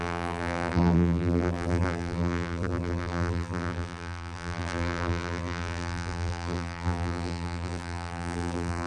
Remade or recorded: remade